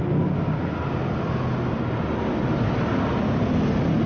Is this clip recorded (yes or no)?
yes